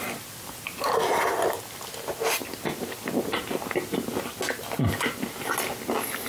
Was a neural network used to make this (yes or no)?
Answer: no